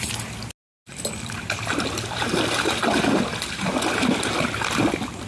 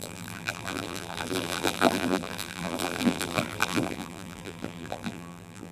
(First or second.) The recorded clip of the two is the first